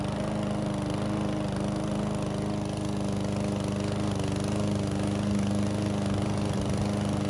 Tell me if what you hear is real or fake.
real